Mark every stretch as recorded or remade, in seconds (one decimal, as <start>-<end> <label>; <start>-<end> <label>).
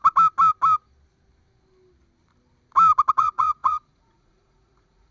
0.0-3.1 recorded; 3.1-5.1 remade